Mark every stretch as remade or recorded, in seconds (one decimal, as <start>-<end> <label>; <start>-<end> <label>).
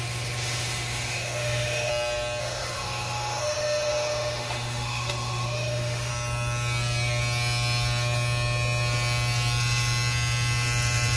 0.0-1.9 remade; 1.9-2.4 recorded; 2.4-6.1 remade; 6.1-11.2 recorded